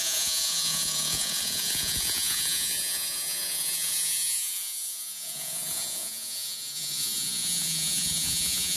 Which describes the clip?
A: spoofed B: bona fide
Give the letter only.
A